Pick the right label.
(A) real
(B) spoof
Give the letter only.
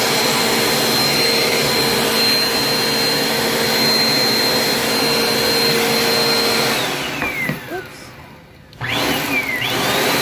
A